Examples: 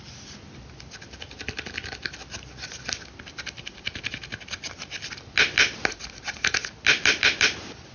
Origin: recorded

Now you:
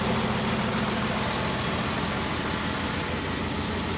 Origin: recorded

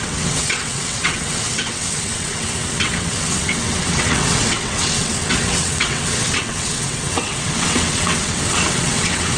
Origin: remade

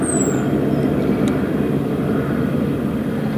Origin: recorded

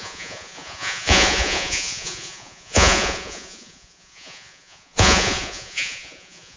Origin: remade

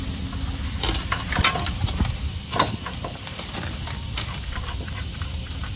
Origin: recorded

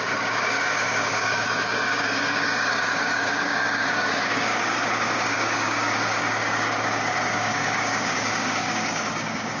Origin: remade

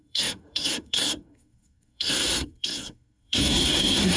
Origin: remade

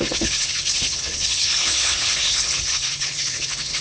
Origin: remade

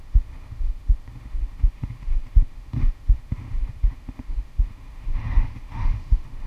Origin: remade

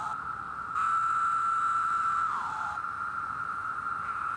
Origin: recorded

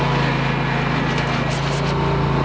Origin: recorded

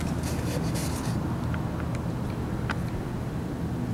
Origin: recorded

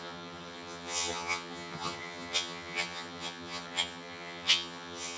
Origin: remade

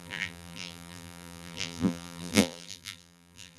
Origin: remade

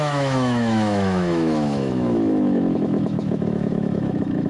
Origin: remade